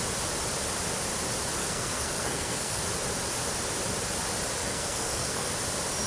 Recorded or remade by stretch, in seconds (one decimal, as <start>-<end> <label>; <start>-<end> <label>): 0.0-1.6 recorded; 1.6-2.8 remade; 2.8-4.6 recorded; 4.6-5.5 remade; 5.5-6.1 recorded